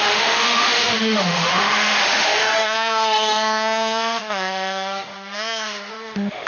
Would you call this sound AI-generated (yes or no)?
yes